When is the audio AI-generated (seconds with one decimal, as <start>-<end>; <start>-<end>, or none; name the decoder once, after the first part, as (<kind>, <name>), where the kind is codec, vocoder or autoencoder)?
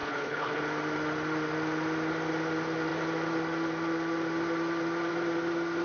0.0-0.6 (codec, HILCodec)